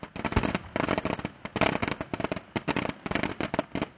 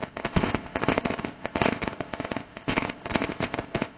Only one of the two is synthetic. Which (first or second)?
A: second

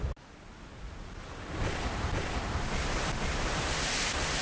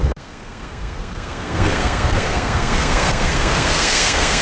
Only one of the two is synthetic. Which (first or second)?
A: second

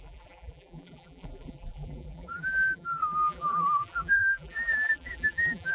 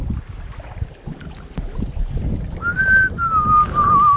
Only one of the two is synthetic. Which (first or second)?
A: first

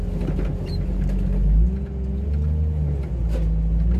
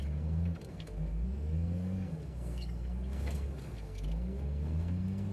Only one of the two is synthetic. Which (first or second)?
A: second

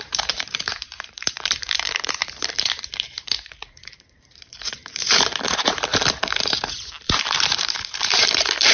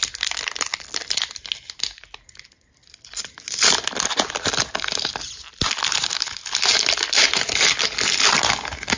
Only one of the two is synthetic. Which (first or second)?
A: first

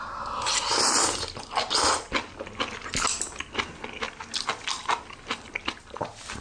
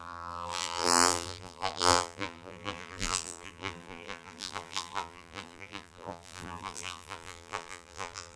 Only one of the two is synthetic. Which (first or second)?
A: second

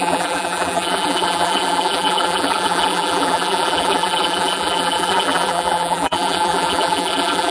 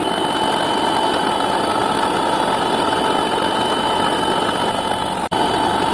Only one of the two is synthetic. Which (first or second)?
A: first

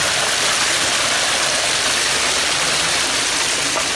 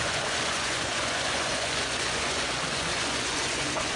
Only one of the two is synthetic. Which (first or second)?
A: second